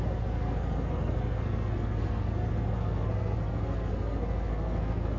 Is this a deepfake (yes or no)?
yes